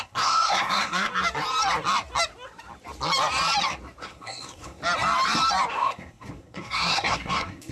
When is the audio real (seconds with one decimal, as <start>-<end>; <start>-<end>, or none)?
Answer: 1.1-4.0; 4.8-5.7